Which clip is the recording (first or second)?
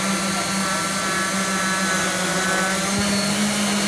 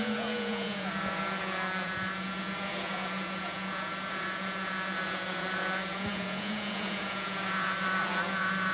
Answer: first